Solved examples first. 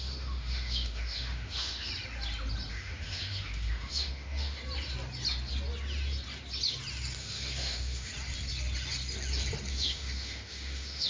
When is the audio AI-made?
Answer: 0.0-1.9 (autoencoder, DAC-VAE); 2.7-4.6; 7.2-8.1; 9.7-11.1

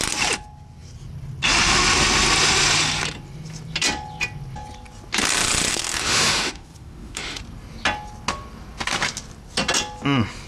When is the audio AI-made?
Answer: 5.7-7.4 (autoencoder, DAC-VAE)

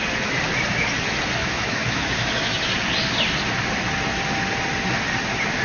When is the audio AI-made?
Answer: 1.4-2.7 (autoencoder, DAC-VAE)

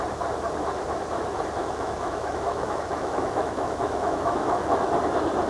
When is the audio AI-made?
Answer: 1.6-4.9 (autoencoder, DAC-VAE)

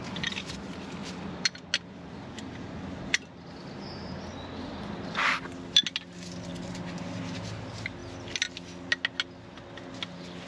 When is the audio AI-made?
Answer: none